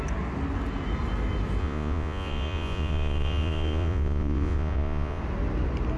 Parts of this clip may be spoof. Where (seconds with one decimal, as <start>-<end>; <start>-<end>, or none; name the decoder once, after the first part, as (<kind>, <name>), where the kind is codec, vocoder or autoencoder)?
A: 1.6-5.2 (vocoder, Vocos)